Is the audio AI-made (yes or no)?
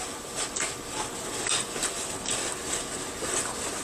no